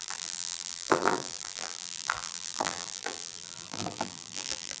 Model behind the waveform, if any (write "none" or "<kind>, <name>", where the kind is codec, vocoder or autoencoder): vocoder, BigVGAN v2